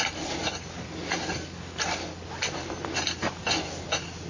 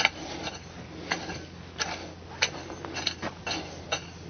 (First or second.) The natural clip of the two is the second